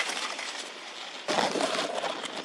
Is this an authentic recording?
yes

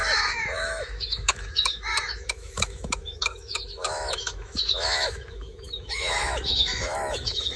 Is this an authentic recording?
no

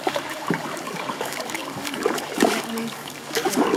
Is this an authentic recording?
no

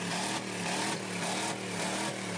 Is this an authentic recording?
yes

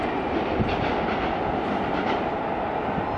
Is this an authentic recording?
yes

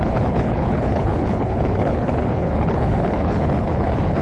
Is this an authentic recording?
no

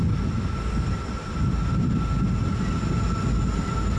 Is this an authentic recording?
yes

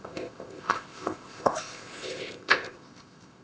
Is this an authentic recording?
no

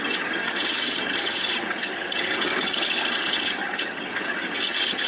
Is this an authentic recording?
no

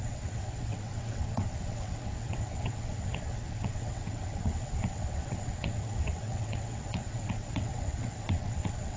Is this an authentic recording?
no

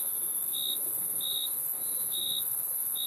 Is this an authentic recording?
no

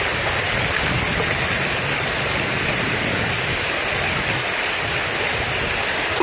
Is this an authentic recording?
yes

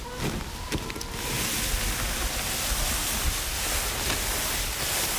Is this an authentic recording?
yes